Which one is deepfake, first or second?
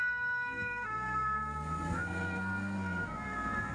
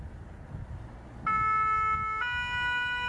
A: first